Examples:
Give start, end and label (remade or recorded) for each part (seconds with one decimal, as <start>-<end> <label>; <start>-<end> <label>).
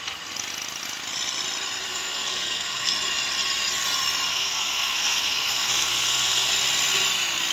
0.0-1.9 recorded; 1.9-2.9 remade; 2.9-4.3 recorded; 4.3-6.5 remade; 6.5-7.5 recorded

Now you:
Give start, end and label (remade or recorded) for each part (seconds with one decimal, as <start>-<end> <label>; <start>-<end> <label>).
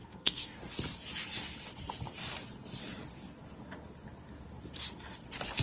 0.0-0.6 remade; 0.6-5.6 recorded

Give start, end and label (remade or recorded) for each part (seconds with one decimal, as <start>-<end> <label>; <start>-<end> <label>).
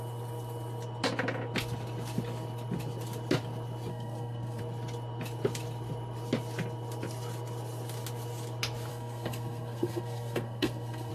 0.0-3.9 recorded; 3.9-4.6 remade; 4.6-8.9 recorded; 8.9-11.1 remade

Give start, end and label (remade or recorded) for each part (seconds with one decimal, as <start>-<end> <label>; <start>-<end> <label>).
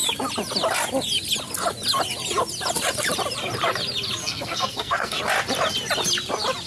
0.0-4.2 recorded; 4.2-5.2 remade; 5.2-6.7 recorded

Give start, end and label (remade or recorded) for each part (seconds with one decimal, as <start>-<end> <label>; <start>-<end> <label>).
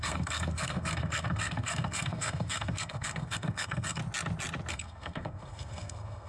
0.0-4.0 remade; 4.0-4.7 recorded; 4.7-6.3 remade